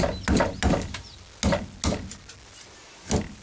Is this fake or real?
real